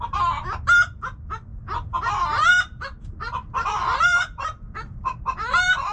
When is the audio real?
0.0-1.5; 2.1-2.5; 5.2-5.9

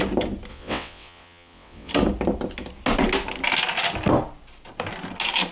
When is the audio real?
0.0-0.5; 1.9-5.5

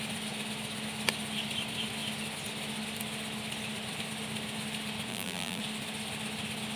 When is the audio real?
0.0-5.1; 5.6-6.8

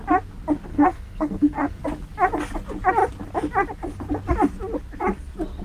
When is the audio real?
0.0-0.7; 1.8-5.6

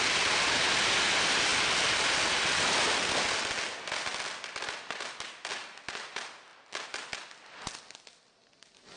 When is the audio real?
0.0-9.0